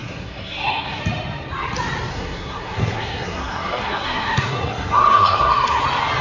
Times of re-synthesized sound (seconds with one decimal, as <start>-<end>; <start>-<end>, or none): 0.0-1.0; 2.1-5.8